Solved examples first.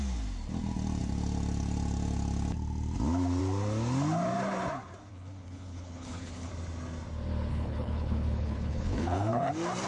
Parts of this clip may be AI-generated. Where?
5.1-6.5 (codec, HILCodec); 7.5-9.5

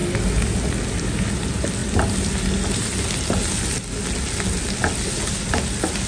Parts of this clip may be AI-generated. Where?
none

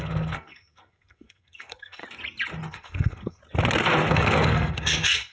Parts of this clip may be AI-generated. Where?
0.0-2.0 (codec, SNAC); 2.7-3.4; 4.1-5.3

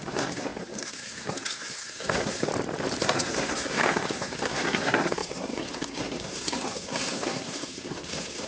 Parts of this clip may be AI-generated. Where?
0.0-2.5 (codec, SNAC); 3.0-8.5

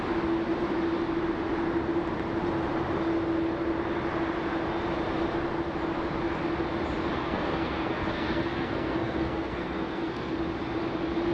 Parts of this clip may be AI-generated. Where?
7.2-10.4 (codec, SNAC)